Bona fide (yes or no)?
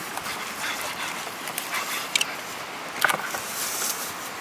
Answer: yes